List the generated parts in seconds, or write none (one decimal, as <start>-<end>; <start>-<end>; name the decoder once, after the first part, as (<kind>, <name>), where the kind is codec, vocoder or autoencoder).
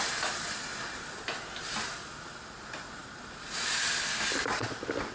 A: none